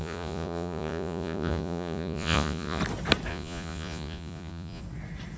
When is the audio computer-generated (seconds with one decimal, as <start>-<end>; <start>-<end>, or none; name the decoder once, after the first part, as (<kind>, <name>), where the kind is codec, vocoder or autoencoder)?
0.0-2.8 (vocoder, Vocos); 3.3-4.8